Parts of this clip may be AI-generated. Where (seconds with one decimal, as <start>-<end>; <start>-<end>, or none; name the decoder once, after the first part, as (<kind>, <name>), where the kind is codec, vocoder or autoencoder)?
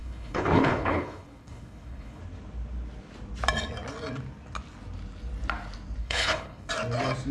0.0-2.2 (codec, HILCodec); 6.0-6.7